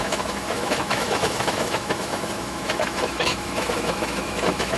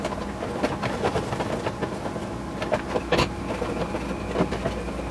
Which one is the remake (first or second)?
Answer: first